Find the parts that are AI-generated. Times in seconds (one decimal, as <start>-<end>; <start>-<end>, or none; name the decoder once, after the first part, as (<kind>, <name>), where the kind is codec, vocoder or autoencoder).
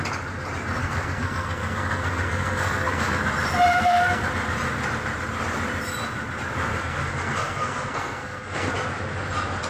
0.8-3.2 (codec, SNAC); 3.7-4.3; 6.7-8.7